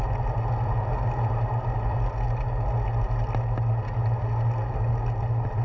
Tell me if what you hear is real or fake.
real